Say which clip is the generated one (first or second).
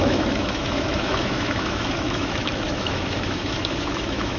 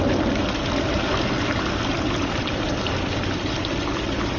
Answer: first